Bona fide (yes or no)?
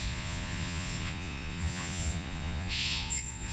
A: no